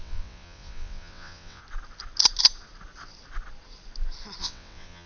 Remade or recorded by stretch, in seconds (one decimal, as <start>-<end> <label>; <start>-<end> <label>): 0.0-1.6 remade; 1.6-4.4 recorded; 4.4-5.1 remade